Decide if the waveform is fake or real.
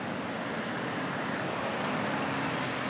real